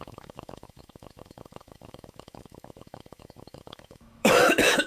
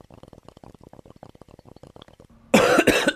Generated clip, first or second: first